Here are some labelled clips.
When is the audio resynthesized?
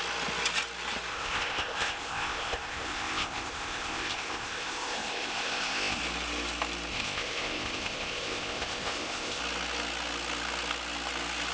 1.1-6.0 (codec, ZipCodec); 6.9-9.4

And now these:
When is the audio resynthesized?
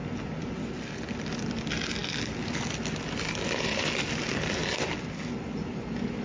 none